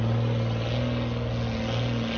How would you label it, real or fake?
real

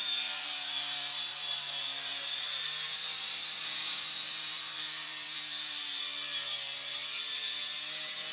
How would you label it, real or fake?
fake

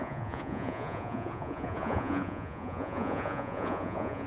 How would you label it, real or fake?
fake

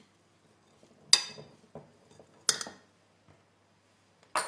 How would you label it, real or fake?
real